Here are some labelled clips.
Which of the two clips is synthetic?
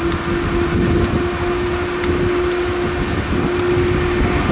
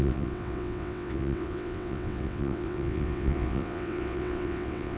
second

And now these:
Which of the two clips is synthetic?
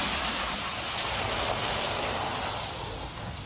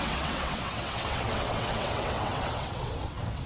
second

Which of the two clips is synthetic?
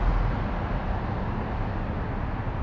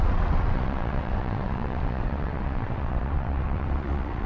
second